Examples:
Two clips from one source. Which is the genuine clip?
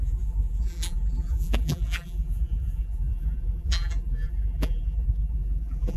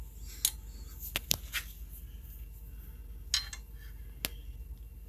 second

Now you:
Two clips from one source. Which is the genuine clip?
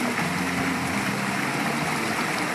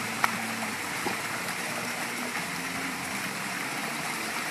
first